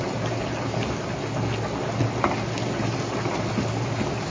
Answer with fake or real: real